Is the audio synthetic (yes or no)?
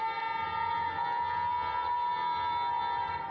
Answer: no